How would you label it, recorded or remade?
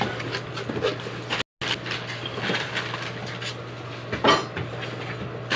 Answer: recorded